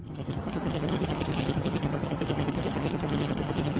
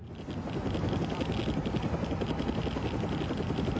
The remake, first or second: first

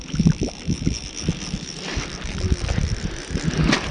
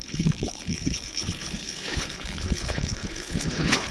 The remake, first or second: second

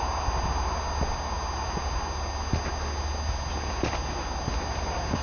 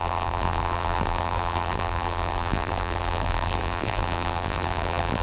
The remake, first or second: second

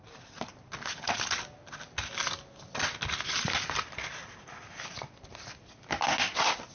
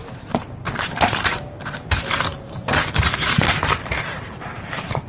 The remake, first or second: second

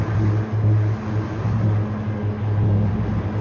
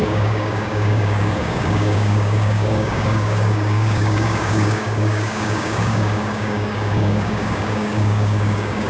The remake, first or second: second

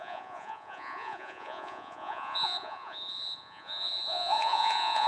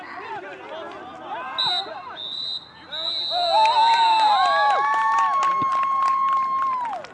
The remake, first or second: first